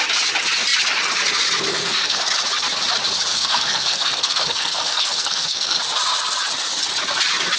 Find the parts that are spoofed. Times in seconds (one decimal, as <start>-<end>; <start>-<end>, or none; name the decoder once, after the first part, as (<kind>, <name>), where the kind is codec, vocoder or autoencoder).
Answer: 1.7-2.2 (codec, SNAC); 3.3-5.8